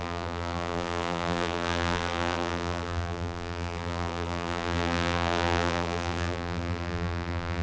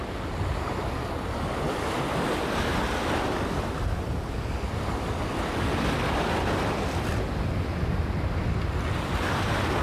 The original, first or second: second